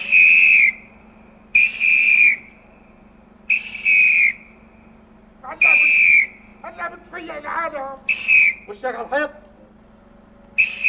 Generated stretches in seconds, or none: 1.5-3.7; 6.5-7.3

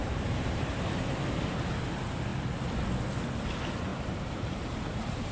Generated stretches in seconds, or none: 0.0-1.0; 3.9-5.3

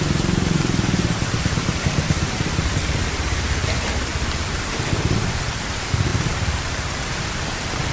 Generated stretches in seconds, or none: 0.0-3.6; 4.4-7.9

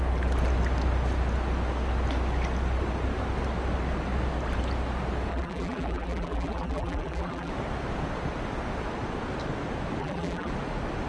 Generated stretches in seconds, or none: 5.3-7.5; 10.0-10.5